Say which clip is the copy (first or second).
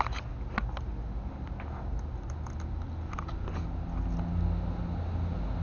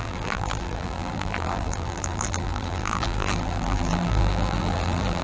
second